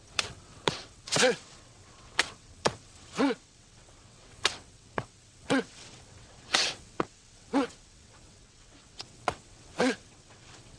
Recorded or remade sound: remade